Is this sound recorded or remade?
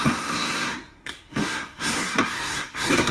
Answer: remade